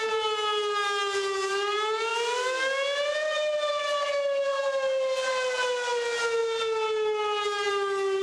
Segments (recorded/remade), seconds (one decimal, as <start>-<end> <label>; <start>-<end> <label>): 0.0-8.2 recorded